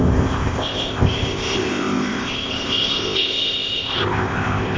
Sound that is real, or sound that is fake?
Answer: fake